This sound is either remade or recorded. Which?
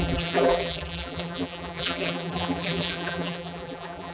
remade